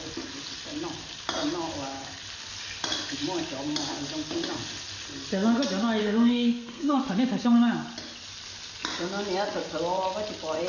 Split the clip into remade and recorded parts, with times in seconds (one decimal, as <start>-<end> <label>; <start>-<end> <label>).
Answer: 0.0-6.0 recorded; 6.0-7.0 remade; 7.0-10.7 recorded